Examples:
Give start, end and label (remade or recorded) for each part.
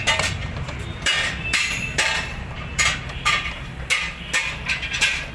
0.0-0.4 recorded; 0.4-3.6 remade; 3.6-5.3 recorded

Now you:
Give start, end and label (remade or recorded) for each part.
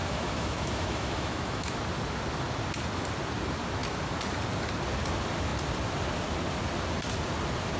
0.0-1.8 remade; 1.8-7.8 recorded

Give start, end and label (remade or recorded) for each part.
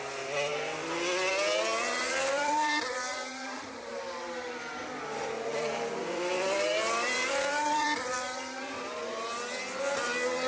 0.0-2.0 recorded; 2.0-3.9 remade; 3.9-5.5 recorded; 5.5-9.0 remade; 9.0-10.5 recorded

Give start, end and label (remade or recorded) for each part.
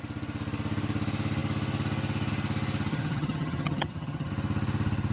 0.0-2.9 recorded; 2.9-4.3 remade; 4.3-5.1 recorded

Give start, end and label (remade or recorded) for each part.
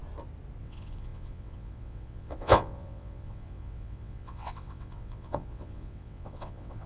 0.0-0.6 recorded; 0.6-6.9 remade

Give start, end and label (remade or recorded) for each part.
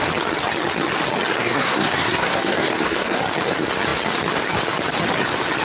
0.0-1.3 recorded; 1.3-3.2 remade; 3.2-5.6 recorded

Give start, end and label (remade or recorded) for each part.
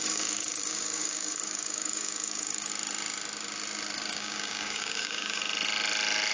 0.0-2.7 remade; 2.7-4.1 recorded; 4.1-5.4 remade; 5.4-6.3 recorded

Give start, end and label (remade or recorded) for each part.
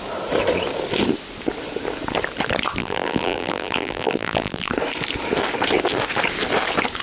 0.0-2.8 recorded; 2.8-4.7 remade; 4.7-7.0 recorded